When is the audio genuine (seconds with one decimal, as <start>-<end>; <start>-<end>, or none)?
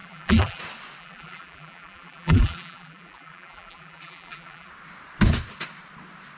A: 0.6-1.0; 4.7-6.4